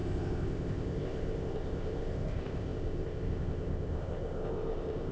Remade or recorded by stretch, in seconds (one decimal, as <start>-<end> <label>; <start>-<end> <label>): 0.0-5.1 remade

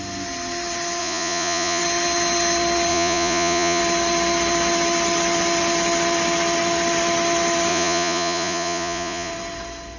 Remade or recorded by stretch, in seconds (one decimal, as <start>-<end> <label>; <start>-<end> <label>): 0.0-1.0 recorded; 1.0-1.8 remade; 1.8-2.9 recorded; 2.9-3.8 remade; 3.8-7.7 recorded; 7.7-9.3 remade; 9.3-10.0 recorded

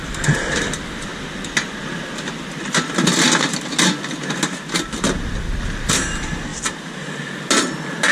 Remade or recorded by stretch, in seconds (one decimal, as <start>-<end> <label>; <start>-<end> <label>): 0.0-6.5 recorded; 6.5-7.3 remade; 7.3-8.1 recorded

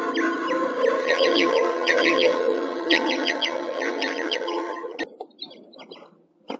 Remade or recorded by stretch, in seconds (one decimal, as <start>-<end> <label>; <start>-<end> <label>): 0.0-1.0 recorded; 1.0-5.0 remade; 5.0-6.6 recorded

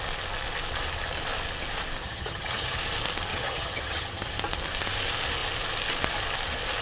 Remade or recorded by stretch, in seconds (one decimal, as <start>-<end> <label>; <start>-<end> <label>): 0.0-2.0 recorded; 2.0-2.8 remade; 2.8-3.3 recorded; 3.3-4.3 remade; 4.3-6.8 recorded

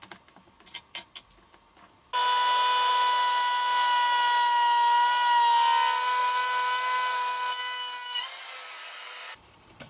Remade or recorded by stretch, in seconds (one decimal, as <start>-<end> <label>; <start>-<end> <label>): 0.0-9.9 recorded

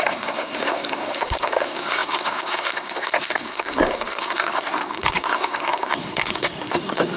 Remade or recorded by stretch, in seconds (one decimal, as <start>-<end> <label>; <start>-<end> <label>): 0.0-7.2 remade

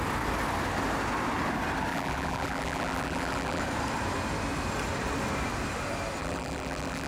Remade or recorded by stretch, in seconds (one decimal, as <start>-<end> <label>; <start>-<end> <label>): 0.0-1.9 recorded; 1.9-3.6 remade; 3.6-6.2 recorded; 6.2-7.1 remade